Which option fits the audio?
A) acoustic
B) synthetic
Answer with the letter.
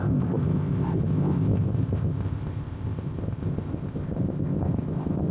B